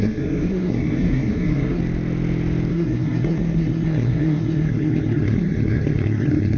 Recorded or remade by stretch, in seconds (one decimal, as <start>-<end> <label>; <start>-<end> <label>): 0.0-1.8 remade; 1.8-2.7 recorded; 2.7-6.6 remade